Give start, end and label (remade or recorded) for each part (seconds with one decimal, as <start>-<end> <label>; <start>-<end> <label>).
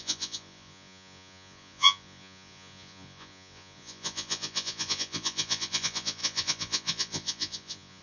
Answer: 0.0-8.0 remade